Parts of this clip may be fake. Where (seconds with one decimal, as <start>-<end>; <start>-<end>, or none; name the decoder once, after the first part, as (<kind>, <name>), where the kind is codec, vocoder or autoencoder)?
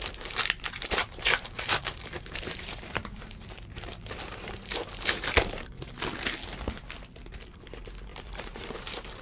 1.0-5.7 (vocoder, BigVGAN v2); 8.1-9.2